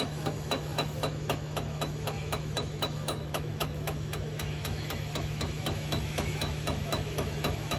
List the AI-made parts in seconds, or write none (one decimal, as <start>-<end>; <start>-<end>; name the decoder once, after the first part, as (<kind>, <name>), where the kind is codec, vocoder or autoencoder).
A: 0.0-7.8 (autoencoder, DAC-VAE)